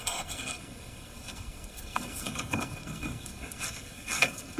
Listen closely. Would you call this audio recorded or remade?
remade